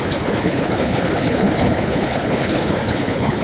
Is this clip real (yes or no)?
no